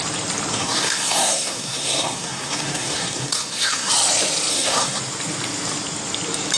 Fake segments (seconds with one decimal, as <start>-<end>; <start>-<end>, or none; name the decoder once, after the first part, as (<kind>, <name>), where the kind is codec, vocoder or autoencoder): 0.5-3.9 (codec, SNAC); 4.5-5.0